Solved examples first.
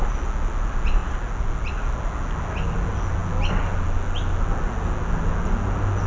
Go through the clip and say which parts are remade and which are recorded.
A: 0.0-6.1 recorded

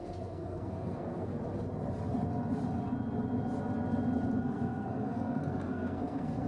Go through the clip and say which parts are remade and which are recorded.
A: 0.0-1.3 remade; 1.3-4.4 recorded; 4.4-6.5 remade